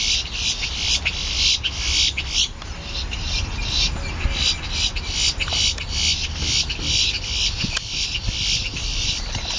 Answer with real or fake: real